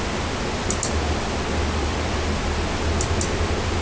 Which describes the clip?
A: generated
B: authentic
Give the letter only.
B